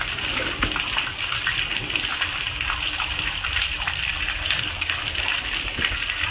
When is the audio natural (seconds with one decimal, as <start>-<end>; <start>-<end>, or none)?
0.0-6.3